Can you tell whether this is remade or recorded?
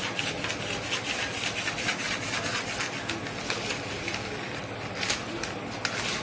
recorded